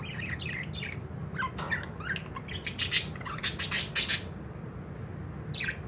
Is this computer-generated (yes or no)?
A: no